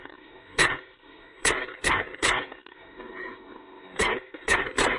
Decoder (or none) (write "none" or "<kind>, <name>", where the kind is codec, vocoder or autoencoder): codec, SNAC